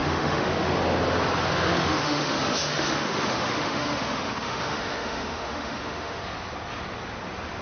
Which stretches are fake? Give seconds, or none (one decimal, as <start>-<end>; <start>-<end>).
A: 0.0-0.8; 1.7-6.2